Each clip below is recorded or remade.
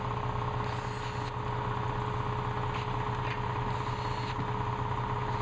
recorded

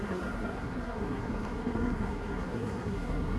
remade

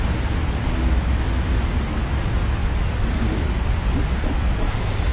recorded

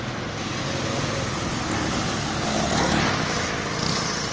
recorded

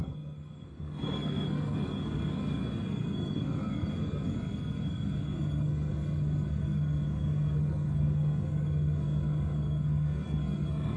remade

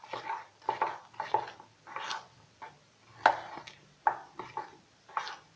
recorded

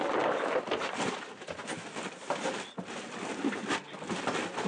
recorded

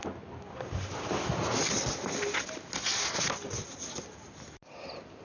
recorded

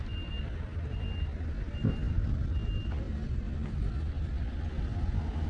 recorded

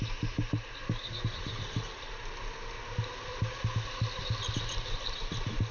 recorded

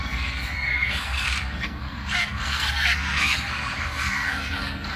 remade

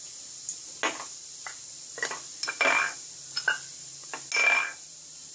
recorded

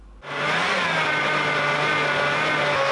recorded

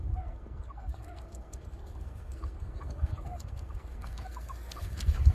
remade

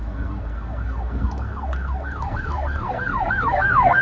remade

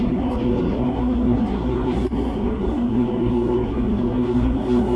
remade